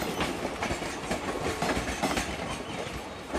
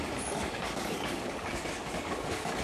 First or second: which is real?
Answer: first